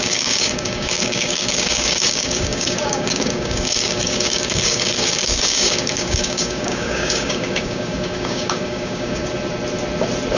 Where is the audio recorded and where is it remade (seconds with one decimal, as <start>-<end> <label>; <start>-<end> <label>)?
0.0-9.2 remade; 9.2-10.4 recorded